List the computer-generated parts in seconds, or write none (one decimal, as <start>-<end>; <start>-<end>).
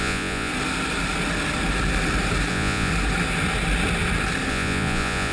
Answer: 0.0-0.5; 2.5-2.9; 4.5-5.3